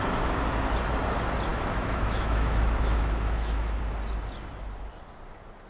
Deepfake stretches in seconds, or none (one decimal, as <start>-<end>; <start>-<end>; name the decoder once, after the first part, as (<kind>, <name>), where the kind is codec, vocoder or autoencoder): 1.5-3.8 (autoencoder, DAC-VAE)